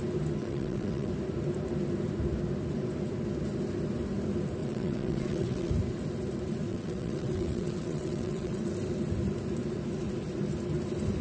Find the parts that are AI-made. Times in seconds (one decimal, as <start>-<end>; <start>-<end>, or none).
0.4-1.1; 4.6-5.7; 6.7-8.7